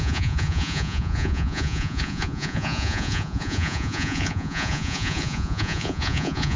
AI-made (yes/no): yes